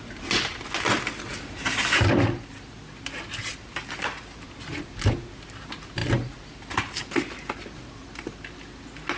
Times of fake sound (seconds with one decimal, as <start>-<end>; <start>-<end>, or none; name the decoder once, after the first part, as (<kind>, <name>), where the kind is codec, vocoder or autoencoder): none